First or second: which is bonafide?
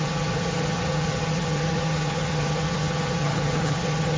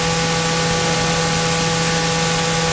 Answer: second